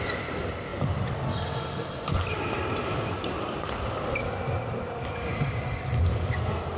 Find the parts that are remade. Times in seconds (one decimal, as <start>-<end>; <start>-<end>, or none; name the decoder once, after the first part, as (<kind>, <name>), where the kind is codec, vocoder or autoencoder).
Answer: none